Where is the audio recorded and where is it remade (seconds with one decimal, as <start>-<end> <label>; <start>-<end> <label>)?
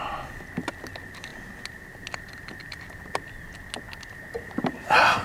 0.0-5.2 recorded